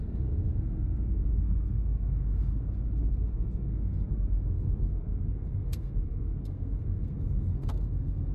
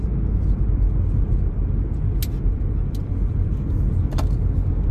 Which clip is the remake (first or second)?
first